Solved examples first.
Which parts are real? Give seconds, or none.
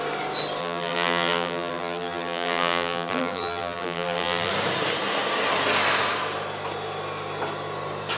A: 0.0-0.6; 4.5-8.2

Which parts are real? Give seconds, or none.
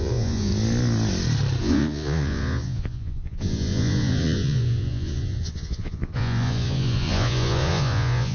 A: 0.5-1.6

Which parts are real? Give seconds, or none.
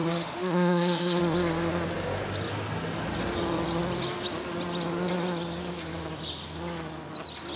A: 1.2-7.6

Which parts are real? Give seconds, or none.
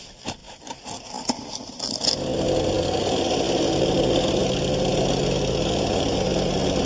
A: 0.0-6.8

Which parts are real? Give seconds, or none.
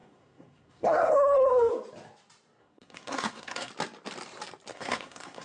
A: 1.7-2.6; 3.7-4.7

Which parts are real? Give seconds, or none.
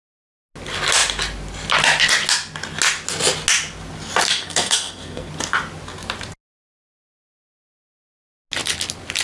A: 0.0-4.3; 5.3-9.2